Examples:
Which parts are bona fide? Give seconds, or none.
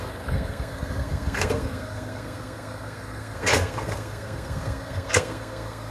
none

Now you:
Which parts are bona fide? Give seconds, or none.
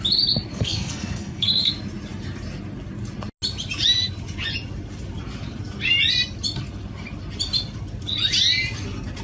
0.0-0.5; 1.7-9.2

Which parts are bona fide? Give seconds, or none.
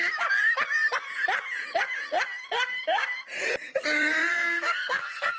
0.0-4.3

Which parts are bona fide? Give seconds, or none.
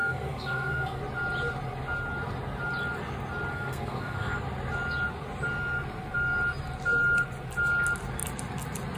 1.0-3.5; 4.3-9.0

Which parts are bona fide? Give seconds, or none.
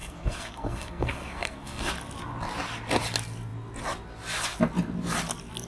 1.9-5.7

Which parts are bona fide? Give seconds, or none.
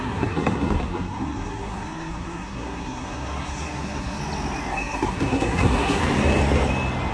4.2-4.7; 6.0-7.1